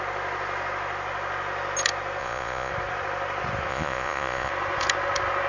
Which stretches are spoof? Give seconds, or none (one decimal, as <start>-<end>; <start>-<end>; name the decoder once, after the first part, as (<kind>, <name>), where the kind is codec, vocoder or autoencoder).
2.2-2.7 (vocoder, Vocos); 3.7-4.5